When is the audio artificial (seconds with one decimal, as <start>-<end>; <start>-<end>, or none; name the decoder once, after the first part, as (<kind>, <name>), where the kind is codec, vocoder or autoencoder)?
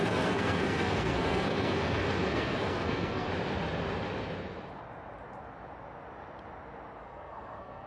0.0-3.3 (codec, SNAC); 7.0-7.9